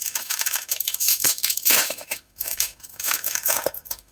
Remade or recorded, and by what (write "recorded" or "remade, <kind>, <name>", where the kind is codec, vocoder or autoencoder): remade, autoencoder, DAC-VAE